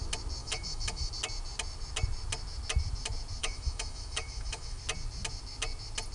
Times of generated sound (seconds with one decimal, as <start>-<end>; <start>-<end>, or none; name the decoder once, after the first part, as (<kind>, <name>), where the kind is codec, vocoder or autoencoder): 0.4-1.1 (autoencoder, DAC-VAE); 3.4-4.8